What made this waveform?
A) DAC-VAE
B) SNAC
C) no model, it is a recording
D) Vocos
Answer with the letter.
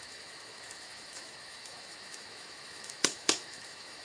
A